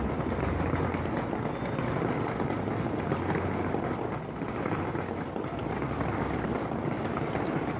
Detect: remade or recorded recorded